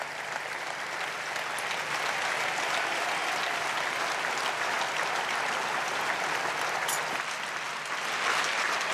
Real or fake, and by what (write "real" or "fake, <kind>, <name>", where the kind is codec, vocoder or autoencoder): fake, vocoder, BigVGAN v2